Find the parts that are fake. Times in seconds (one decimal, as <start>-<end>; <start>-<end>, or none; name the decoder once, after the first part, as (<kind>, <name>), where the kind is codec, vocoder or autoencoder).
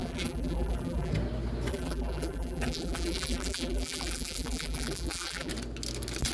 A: 0.0-1.1 (vocoder, BigVGAN v2); 1.7-5.5